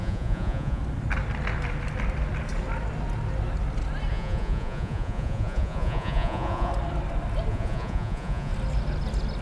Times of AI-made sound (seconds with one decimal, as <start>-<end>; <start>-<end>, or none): 0.0-0.8; 4.1-6.7; 7.5-8.5